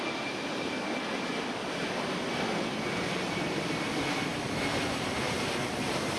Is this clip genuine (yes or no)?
yes